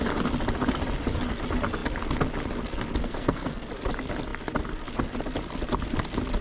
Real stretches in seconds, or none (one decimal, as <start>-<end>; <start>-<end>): 0.0-3.0; 3.7-6.4